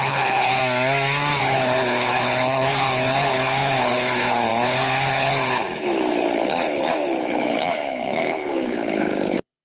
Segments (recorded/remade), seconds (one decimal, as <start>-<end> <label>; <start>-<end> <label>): 0.0-0.6 remade; 0.6-1.4 recorded; 1.4-9.6 remade